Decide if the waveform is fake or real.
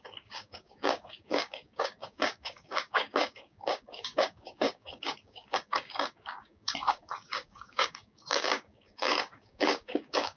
fake